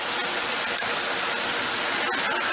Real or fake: real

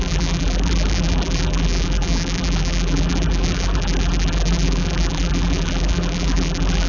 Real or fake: fake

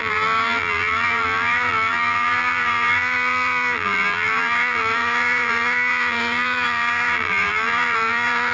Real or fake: fake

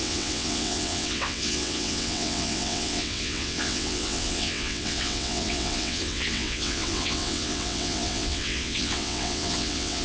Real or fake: fake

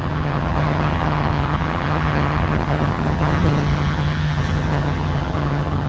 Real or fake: fake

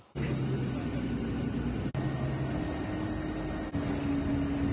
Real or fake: real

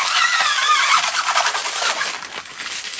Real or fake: real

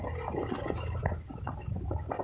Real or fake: real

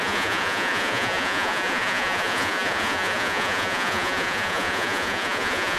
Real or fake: fake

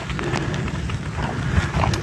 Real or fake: real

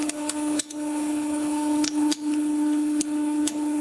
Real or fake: fake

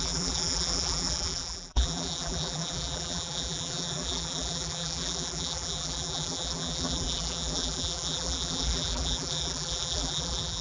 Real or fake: fake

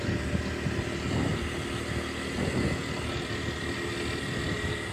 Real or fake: real